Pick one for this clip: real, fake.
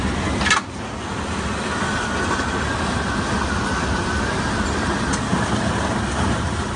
real